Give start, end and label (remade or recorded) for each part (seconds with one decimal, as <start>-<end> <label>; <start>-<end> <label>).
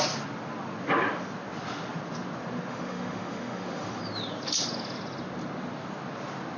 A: 0.0-2.7 recorded; 2.7-4.0 remade; 4.0-6.6 recorded